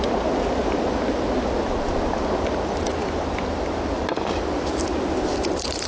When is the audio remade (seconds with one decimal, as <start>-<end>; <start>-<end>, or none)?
none